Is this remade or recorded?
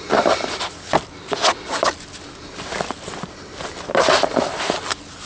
recorded